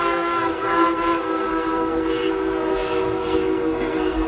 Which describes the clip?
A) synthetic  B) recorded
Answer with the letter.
A